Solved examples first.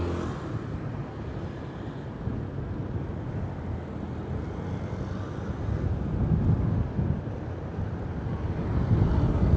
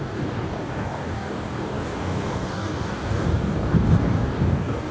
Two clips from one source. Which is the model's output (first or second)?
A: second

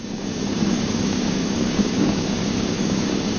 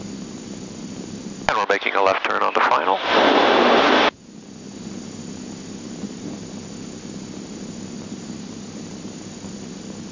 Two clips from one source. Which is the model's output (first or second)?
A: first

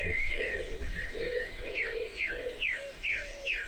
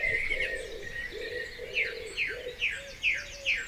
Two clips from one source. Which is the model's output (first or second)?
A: first